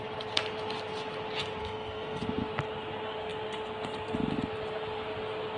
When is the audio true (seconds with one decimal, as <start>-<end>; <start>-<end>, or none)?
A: 0.0-1.6; 2.2-5.6